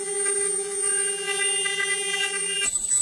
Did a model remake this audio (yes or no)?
yes